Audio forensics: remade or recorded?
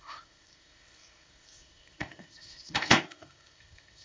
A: remade